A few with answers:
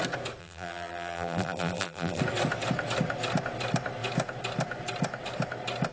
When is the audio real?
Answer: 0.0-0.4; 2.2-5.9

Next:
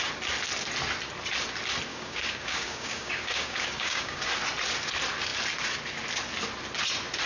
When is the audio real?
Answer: 0.0-1.9; 4.3-7.3